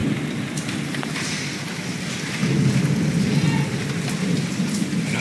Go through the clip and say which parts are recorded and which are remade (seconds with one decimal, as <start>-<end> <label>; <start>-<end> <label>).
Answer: 0.0-5.2 recorded